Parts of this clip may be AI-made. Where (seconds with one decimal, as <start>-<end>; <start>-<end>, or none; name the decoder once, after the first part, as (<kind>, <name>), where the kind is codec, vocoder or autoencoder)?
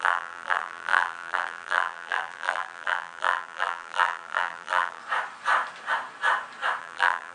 0.0-5.0 (vocoder, BigVGAN v2); 6.8-7.3